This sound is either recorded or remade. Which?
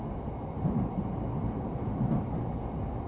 recorded